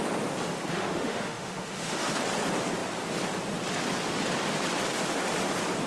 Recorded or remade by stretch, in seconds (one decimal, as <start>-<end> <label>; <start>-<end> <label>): 0.0-0.7 recorded; 0.7-2.1 remade; 2.1-5.9 recorded